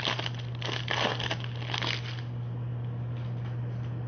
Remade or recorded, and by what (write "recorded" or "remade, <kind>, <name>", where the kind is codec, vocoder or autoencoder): recorded